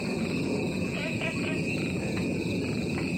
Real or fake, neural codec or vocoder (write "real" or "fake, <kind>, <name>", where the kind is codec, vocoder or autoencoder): fake, vocoder, Vocos